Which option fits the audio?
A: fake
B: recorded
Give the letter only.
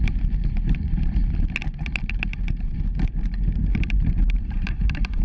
A